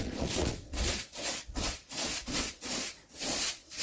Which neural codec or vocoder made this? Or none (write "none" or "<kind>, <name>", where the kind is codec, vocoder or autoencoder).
vocoder, Vocos